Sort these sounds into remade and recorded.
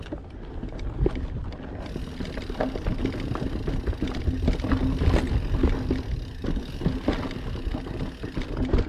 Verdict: recorded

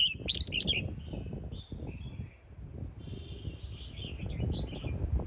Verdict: recorded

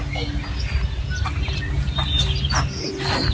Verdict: recorded